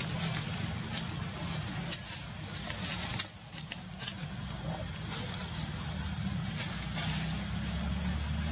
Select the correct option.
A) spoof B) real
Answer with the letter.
B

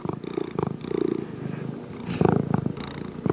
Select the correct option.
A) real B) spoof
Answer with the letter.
A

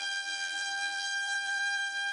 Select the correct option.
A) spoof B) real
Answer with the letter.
A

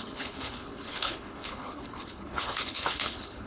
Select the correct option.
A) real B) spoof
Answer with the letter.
B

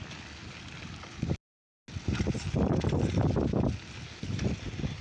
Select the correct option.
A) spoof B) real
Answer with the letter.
B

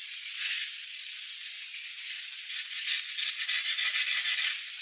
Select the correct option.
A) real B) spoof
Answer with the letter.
A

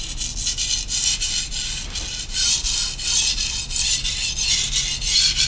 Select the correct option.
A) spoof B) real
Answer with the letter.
B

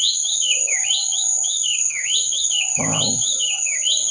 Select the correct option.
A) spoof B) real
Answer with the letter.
A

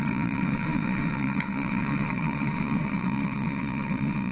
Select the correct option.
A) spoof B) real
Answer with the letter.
A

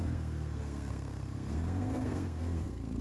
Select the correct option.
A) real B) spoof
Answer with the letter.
B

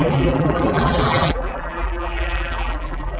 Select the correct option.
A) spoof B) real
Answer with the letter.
A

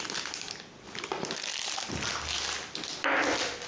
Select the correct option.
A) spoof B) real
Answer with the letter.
B